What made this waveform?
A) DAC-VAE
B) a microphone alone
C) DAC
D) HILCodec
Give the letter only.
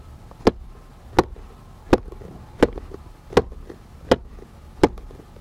B